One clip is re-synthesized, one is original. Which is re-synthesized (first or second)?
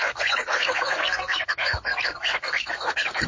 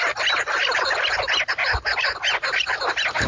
first